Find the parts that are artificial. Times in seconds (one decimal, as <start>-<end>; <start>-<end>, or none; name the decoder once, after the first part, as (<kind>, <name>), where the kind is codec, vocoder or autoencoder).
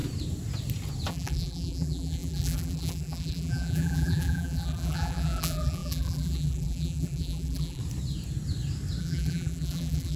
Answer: 1.1-7.8 (vocoder, BigVGAN v2); 9.0-10.2